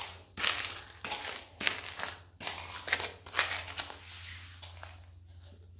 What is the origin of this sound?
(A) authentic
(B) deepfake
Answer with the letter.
A